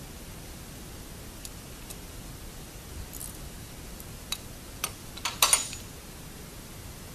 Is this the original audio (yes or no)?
yes